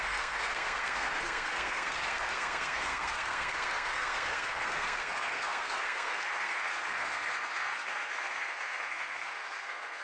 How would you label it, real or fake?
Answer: fake